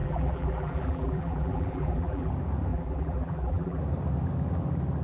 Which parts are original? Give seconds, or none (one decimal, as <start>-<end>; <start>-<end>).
2.3-2.7; 3.8-5.0